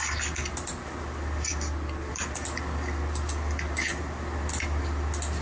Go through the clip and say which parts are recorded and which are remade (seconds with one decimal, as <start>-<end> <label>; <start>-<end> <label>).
0.0-5.4 recorded